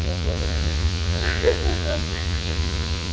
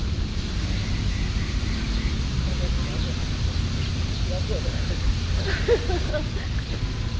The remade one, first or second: first